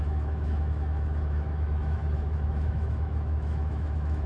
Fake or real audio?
fake